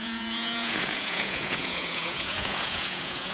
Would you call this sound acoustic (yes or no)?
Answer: no